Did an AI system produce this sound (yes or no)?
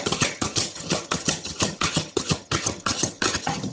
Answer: yes